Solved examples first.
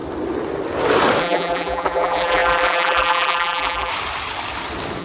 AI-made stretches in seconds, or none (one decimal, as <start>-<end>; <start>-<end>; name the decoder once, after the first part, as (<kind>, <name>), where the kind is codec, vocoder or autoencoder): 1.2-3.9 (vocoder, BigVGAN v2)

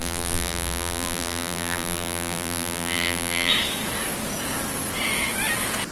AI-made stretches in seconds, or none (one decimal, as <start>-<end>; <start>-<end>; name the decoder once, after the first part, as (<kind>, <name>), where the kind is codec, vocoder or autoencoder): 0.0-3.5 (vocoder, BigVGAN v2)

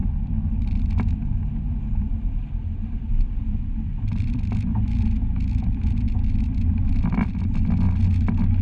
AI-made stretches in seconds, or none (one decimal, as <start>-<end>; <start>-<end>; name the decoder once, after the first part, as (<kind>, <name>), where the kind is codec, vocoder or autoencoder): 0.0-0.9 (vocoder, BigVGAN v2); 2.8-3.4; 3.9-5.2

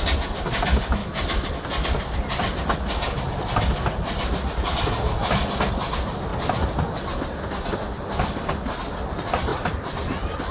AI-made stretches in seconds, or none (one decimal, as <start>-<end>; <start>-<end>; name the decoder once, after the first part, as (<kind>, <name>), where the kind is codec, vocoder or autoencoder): 1.0-1.5 (vocoder, BigVGAN v2); 6.3-6.9; 9.5-10.5